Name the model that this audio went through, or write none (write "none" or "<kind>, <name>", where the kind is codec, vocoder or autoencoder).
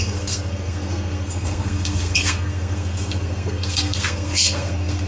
codec, SNAC